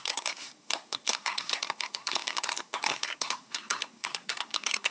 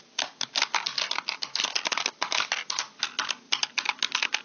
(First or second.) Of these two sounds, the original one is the second